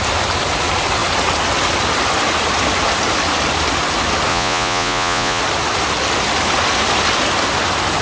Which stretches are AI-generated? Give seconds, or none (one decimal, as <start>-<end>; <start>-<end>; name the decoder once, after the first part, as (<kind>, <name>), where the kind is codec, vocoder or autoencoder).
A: 4.3-5.4 (vocoder, Vocos)